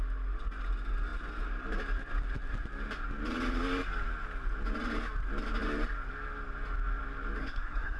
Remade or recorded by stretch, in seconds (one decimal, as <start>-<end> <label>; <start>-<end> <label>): 0.0-7.4 recorded; 7.4-8.0 remade